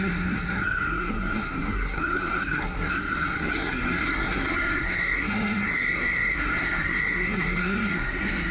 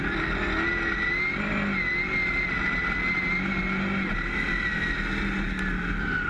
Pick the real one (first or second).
second